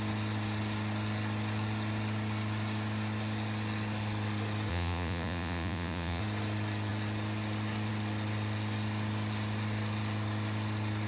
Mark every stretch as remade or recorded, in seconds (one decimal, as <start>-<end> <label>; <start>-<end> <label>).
0.0-4.7 recorded; 4.7-6.2 remade; 6.2-11.1 recorded